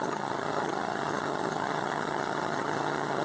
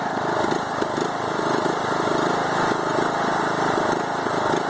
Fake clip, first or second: first